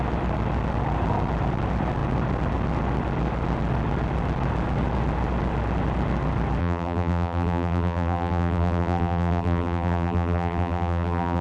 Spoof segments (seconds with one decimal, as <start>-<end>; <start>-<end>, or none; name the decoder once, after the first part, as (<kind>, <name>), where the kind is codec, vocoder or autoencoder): 6.6-11.4 (vocoder, BigVGAN v2)